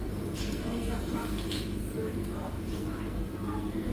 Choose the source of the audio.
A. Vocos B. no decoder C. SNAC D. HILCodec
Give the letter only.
C